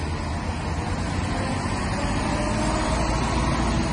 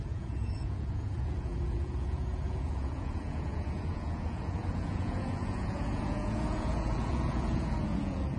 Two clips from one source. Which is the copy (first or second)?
second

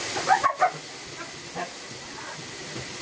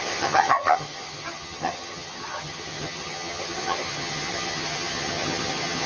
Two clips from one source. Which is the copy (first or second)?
second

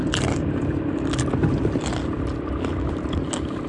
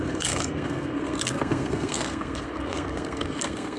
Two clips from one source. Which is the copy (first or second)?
second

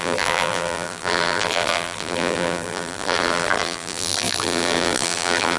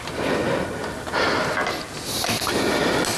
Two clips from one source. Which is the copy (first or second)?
first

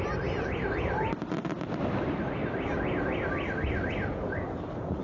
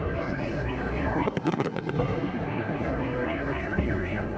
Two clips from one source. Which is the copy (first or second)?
second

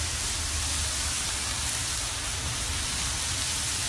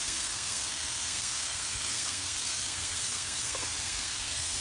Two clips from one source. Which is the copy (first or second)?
second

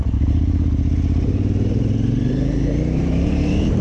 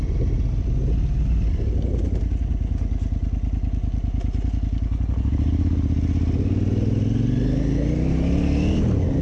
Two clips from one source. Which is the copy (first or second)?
first